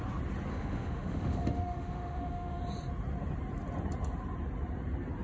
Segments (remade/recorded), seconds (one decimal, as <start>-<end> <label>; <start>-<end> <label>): 0.0-0.5 recorded; 0.5-2.6 remade; 2.6-5.2 recorded

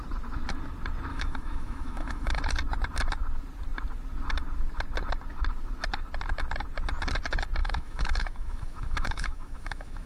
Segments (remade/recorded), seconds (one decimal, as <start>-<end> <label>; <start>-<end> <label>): 0.0-1.1 recorded; 1.1-2.4 remade; 2.4-7.6 recorded; 7.6-10.1 remade

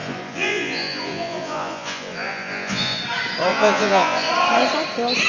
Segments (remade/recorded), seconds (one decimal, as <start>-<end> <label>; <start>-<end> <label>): 0.0-3.0 remade; 3.0-3.5 recorded; 3.5-4.3 remade; 4.3-5.3 recorded

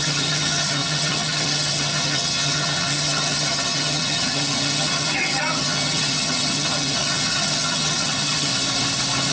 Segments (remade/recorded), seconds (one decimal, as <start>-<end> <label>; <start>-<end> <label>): 0.0-8.5 remade; 8.5-9.3 recorded

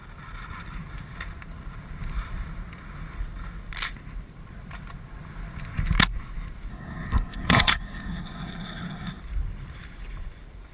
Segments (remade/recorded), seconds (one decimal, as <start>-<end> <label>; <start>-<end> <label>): 0.0-6.7 recorded; 6.7-9.2 remade; 9.2-10.7 recorded

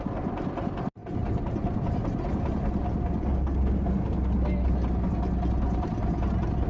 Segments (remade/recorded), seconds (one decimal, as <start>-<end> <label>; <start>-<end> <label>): 0.0-6.7 recorded